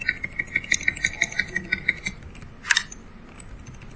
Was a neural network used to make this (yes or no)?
no